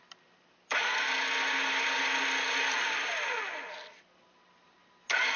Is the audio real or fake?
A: real